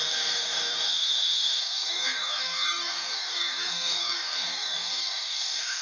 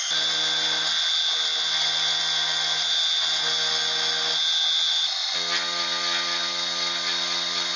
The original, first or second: second